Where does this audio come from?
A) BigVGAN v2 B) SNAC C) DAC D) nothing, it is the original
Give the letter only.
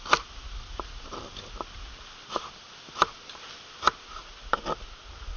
D